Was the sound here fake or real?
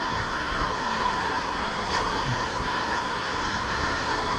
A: fake